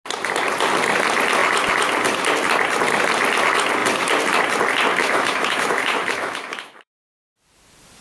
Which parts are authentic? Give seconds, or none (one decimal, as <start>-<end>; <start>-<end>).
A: 0.0-5.0; 6.8-8.0